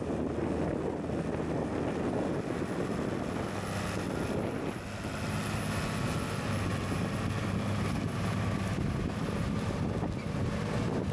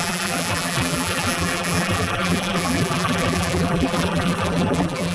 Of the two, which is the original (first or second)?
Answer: first